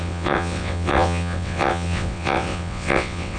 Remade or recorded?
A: remade